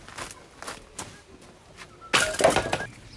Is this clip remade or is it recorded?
recorded